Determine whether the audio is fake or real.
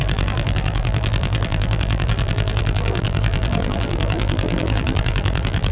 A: fake